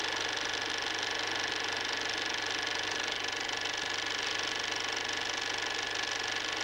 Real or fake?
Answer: real